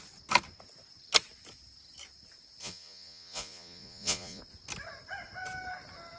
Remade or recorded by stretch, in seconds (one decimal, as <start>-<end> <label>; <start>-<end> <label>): 0.0-2.6 recorded; 2.6-4.4 remade; 4.4-6.2 recorded